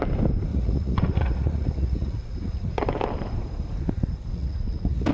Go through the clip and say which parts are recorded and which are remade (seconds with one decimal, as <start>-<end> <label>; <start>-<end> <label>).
0.0-0.5 recorded; 0.5-2.8 remade; 2.8-4.3 recorded; 4.3-5.1 remade